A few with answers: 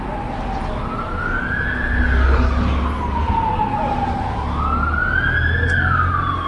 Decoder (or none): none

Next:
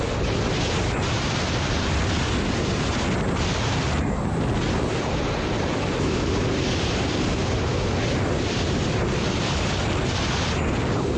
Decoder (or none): none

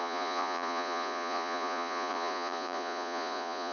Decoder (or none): vocoder, Vocos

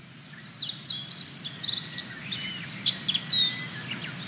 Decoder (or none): none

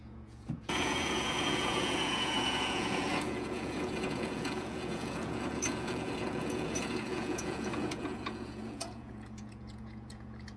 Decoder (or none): vocoder, Vocos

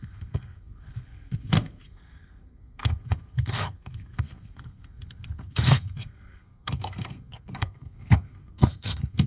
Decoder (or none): codec, SNAC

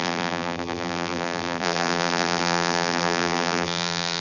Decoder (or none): vocoder, BigVGAN v2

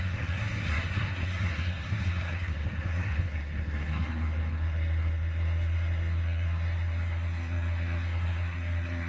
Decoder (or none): codec, SNAC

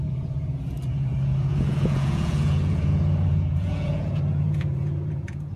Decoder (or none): vocoder, Vocos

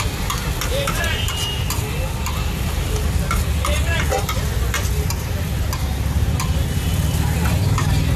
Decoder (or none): none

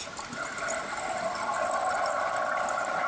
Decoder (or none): none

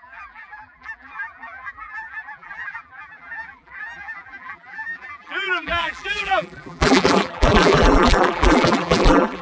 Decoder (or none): vocoder, BigVGAN v2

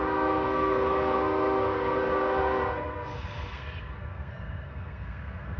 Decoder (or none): codec, SNAC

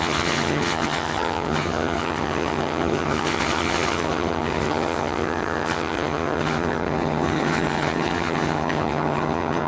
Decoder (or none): vocoder, HiFi-GAN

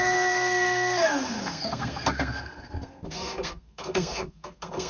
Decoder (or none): codec, SNAC